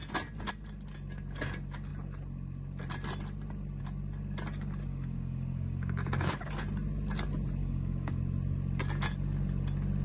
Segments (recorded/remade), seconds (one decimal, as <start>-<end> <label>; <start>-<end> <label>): 0.0-4.9 recorded; 4.9-6.5 remade; 6.5-7.6 recorded; 7.6-8.2 remade; 8.2-10.0 recorded